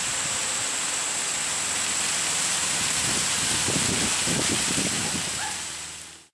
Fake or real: real